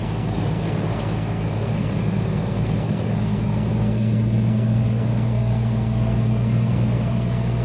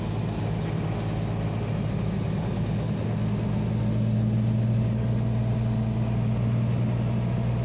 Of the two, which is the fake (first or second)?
first